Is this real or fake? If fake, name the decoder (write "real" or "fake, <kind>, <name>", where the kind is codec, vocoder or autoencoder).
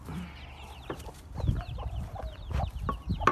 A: real